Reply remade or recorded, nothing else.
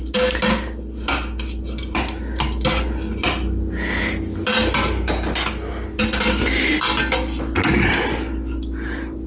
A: recorded